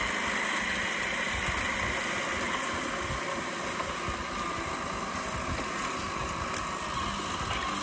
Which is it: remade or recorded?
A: recorded